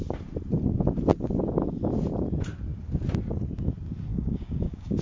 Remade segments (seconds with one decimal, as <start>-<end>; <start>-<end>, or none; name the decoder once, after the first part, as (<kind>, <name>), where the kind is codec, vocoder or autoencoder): 4.1-5.0 (codec, DAC)